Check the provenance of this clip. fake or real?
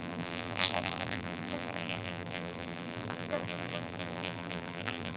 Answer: fake